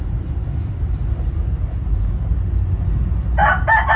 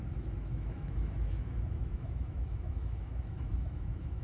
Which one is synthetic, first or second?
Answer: second